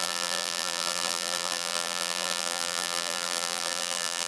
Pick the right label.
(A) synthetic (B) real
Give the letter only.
A